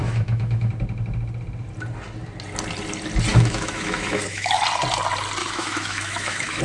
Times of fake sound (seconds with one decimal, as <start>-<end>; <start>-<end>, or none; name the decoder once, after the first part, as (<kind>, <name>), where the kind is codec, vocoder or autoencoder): 0.0-0.7 (autoencoder, DAC-VAE); 3.3-4.6; 5.4-6.6